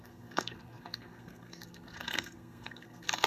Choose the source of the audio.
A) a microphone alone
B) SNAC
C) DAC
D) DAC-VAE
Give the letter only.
B